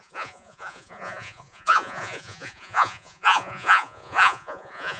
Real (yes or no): no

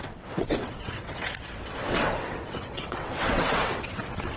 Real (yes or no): no